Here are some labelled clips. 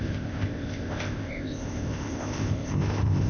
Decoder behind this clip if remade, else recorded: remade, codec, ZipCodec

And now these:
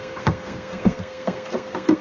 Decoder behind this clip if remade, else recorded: remade, codec, SNAC